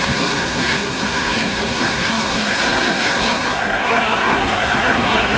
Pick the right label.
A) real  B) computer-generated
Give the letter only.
B